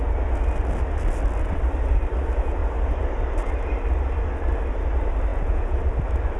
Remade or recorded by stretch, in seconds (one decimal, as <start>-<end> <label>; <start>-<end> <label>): 0.0-5.3 recorded; 5.3-5.8 remade; 5.8-6.4 recorded